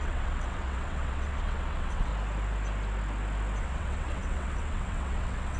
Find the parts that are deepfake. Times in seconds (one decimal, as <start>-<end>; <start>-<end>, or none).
0.0-2.1; 3.6-5.6